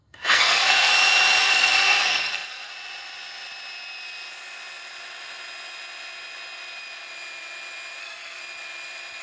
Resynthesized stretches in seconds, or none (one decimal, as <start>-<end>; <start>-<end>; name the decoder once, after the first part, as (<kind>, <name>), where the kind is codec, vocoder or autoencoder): 0.0-0.9 (codec, SNAC); 1.4-2.7; 8.0-8.4